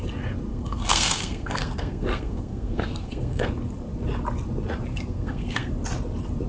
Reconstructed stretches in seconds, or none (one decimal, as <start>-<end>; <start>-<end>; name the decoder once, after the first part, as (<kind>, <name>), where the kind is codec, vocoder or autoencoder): 0.5-3.5 (codec, SNAC); 4.9-5.7